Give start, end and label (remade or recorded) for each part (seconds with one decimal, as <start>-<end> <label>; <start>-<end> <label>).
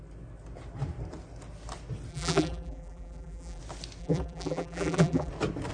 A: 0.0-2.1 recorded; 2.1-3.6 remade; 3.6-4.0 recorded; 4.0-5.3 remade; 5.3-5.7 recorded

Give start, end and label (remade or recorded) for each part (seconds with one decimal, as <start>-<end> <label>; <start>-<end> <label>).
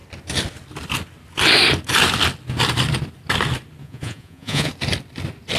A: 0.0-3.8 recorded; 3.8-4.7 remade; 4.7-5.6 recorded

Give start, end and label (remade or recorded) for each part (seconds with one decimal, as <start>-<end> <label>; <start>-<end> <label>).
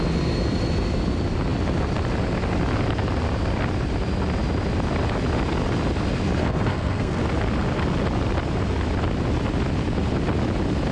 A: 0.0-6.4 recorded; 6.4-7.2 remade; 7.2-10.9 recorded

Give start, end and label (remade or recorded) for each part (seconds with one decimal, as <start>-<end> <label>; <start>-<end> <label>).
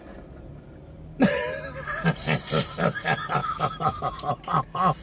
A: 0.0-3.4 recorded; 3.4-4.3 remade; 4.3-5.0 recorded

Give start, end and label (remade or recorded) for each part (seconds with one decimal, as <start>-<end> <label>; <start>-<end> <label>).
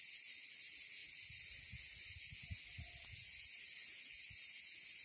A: 0.0-5.0 recorded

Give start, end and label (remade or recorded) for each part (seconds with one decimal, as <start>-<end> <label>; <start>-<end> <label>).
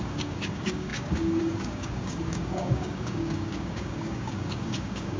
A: 0.0-5.2 remade